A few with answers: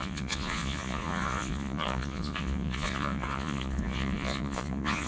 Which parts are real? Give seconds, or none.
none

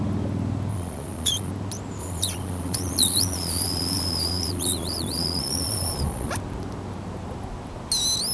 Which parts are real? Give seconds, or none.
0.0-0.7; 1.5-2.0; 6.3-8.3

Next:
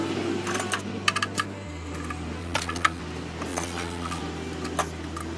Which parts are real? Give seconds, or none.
0.0-2.4; 3.0-3.5; 4.2-5.4

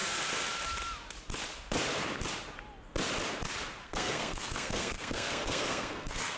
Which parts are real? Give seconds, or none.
0.0-3.8

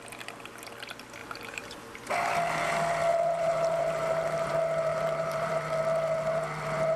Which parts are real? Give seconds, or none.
0.0-1.2; 2.1-3.1; 4.5-4.9; 5.5-7.0

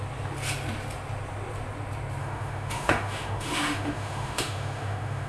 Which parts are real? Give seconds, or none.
0.0-2.2

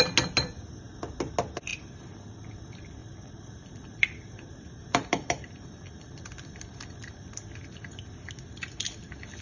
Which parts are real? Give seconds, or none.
0.0-3.0; 7.3-9.4

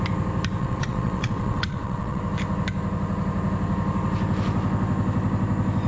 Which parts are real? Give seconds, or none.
0.0-0.6; 2.2-5.9